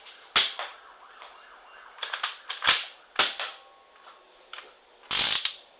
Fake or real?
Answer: real